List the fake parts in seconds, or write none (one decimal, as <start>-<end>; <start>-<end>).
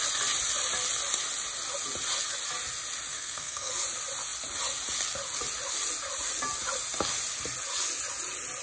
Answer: 3.1-3.7